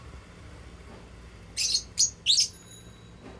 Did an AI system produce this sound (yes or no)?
no